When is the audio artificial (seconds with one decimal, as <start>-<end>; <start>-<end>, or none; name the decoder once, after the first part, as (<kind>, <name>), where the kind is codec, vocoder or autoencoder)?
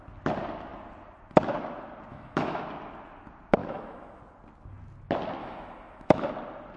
2.1-2.6 (autoencoder, DAC-VAE); 3.6-4.2; 5.4-6.3